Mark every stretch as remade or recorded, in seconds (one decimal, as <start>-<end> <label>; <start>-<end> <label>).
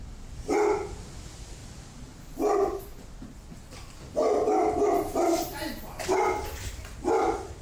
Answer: 0.0-1.6 recorded; 1.6-2.8 remade; 2.8-7.6 recorded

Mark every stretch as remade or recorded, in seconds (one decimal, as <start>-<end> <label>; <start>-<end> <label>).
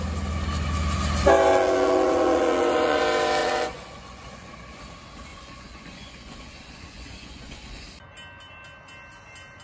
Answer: 0.0-1.5 recorded; 1.5-3.0 remade; 3.0-3.4 recorded; 3.4-4.8 remade; 4.8-5.3 recorded; 5.3-7.8 remade; 7.8-9.6 recorded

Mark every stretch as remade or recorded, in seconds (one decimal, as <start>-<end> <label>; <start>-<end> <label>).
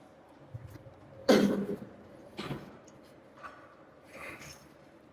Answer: 0.0-1.2 recorded; 1.2-4.3 remade; 4.3-5.1 recorded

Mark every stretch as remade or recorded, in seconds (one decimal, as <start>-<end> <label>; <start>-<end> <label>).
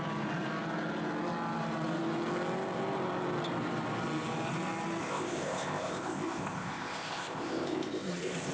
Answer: 0.0-5.0 recorded; 5.0-8.5 remade